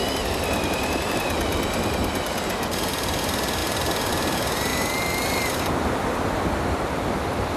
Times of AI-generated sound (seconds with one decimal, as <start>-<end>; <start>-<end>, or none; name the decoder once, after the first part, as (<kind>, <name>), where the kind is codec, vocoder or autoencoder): none